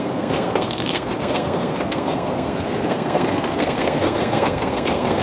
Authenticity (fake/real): fake